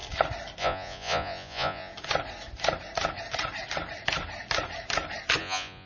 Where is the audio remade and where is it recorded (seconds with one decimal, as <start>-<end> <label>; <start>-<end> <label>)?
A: 0.0-0.6 recorded; 0.6-1.9 remade; 1.9-5.4 recorded; 5.4-5.9 remade